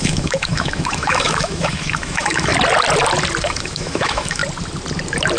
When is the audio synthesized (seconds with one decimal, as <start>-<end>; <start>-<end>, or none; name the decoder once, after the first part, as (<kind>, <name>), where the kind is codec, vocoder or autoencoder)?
0.0-2.5 (autoencoder, DAC-VAE); 3.4-4.4